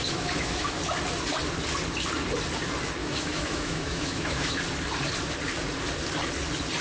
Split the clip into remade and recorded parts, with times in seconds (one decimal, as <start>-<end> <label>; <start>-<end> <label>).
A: 0.0-0.8 remade; 0.8-3.0 recorded; 3.0-4.6 remade; 4.6-6.8 recorded